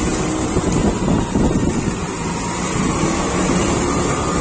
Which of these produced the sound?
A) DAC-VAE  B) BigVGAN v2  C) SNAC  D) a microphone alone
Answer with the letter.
D